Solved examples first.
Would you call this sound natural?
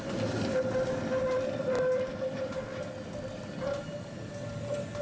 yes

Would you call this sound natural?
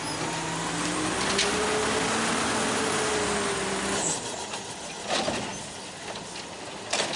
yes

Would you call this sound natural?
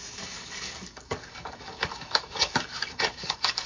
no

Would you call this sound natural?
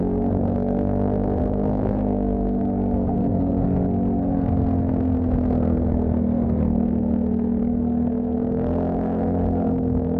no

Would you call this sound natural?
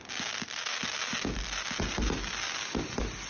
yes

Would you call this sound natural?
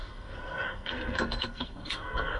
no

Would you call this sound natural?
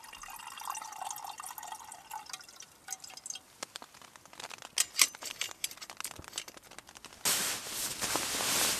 yes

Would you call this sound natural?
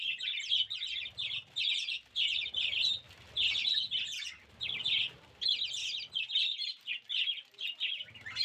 yes